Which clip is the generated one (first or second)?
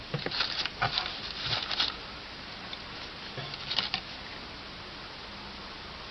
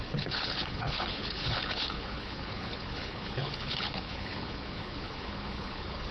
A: second